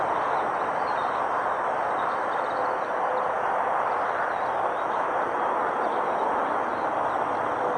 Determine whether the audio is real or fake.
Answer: real